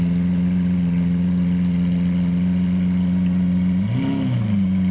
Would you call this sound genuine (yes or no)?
yes